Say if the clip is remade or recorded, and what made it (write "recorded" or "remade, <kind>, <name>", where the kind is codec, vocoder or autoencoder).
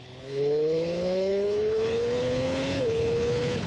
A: remade, codec, HILCodec